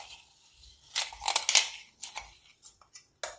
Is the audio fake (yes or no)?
no